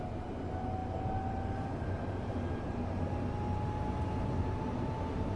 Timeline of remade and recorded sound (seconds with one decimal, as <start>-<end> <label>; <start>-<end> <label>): 0.0-5.4 recorded